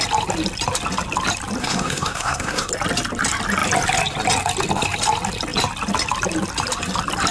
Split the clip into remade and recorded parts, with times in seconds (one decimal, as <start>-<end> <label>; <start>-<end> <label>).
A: 0.0-1.6 recorded; 1.6-2.7 remade; 2.7-7.3 recorded